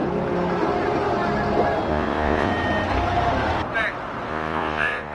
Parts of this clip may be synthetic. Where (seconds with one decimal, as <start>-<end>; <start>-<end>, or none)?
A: 1.9-2.5; 4.3-5.1